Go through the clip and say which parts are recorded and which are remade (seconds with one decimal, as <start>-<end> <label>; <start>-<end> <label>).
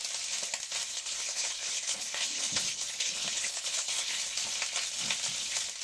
0.0-0.9 recorded; 0.9-4.2 remade; 4.2-5.8 recorded